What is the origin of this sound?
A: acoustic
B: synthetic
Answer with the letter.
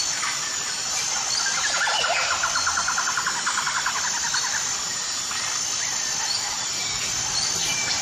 A